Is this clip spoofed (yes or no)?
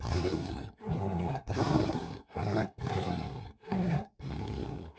yes